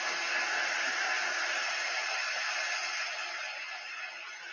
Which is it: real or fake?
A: real